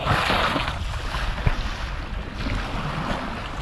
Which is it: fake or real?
real